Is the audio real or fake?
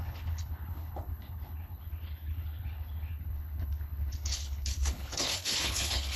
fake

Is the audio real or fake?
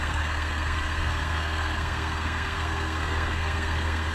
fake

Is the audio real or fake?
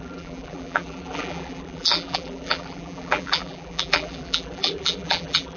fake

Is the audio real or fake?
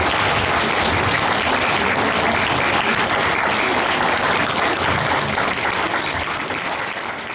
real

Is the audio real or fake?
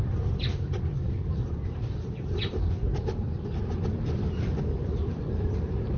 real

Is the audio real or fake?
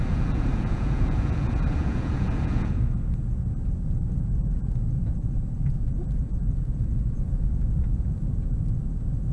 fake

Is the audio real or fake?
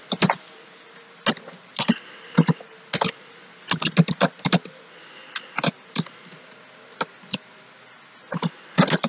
real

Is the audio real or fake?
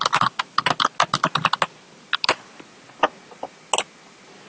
real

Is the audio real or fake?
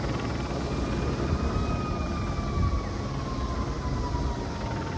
real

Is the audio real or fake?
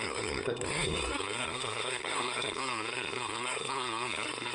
fake